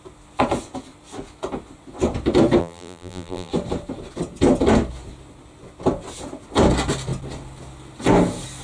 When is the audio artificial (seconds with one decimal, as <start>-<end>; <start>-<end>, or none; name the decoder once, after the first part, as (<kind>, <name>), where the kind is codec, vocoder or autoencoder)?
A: 2.6-3.5 (vocoder, BigVGAN v2)